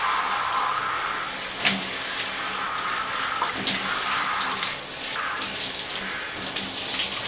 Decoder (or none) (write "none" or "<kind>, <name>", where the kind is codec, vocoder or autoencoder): none